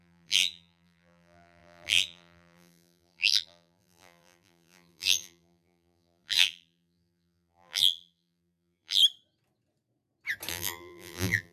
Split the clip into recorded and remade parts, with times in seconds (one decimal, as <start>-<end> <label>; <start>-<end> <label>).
0.0-9.0 remade; 9.0-10.5 recorded; 10.5-11.5 remade